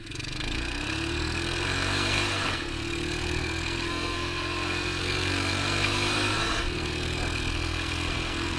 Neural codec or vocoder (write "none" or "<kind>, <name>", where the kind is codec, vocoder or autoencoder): codec, SNAC